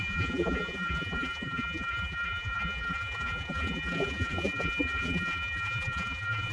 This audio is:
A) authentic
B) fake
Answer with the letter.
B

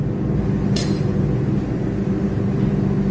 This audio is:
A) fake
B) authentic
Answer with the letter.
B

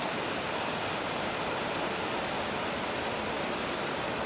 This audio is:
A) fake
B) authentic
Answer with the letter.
B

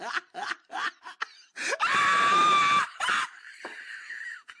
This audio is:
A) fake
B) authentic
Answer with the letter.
A